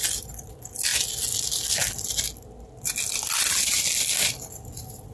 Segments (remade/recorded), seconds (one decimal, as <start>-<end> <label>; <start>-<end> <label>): 0.0-5.1 recorded